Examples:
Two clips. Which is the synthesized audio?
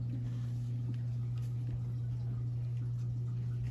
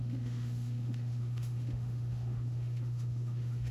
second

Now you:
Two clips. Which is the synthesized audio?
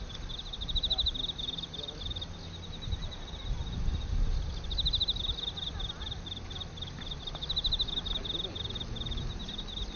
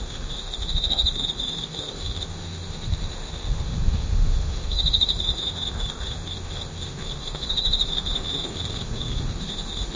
second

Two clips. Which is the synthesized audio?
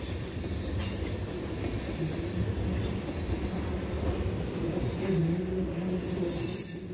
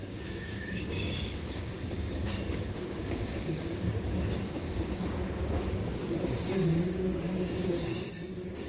second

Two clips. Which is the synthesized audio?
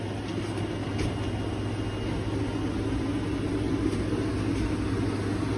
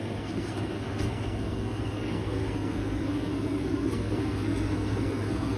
second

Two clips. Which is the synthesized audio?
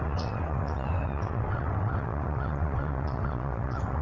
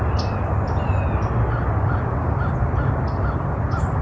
first